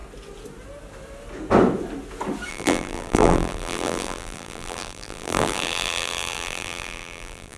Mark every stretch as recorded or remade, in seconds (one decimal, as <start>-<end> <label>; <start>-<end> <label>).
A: 0.0-2.5 recorded; 2.5-7.6 remade